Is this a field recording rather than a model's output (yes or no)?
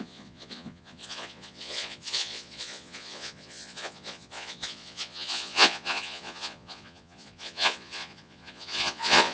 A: no